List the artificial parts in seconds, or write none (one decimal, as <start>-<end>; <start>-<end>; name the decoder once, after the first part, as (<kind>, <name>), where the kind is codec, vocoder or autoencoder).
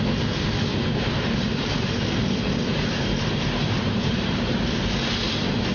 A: 0.7-2.0 (vocoder, BigVGAN v2); 2.7-4.7